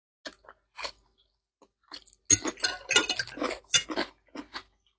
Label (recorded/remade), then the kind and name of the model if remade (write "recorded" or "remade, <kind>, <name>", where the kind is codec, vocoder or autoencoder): recorded